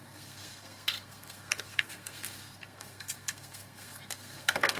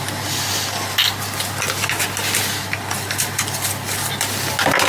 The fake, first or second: first